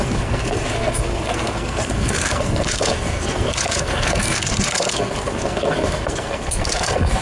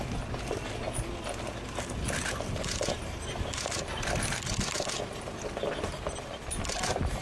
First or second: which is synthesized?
first